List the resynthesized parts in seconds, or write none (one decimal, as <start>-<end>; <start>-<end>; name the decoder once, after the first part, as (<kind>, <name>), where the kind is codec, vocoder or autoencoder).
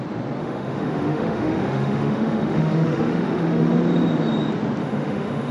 0.4-3.7 (autoencoder, DAC-VAE); 4.8-5.5